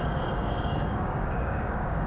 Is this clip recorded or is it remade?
remade